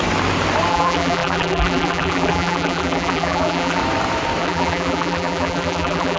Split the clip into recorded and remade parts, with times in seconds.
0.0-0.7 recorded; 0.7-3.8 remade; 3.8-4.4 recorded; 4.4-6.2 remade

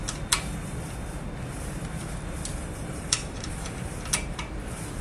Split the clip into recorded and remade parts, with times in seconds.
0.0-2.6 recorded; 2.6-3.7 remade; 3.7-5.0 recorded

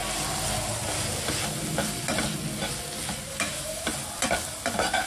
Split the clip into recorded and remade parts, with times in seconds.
0.0-3.3 recorded; 3.3-3.8 remade; 3.8-5.1 recorded